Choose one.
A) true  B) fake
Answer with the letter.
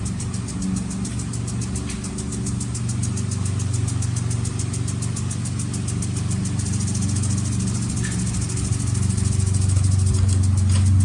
A